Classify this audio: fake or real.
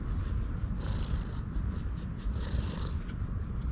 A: real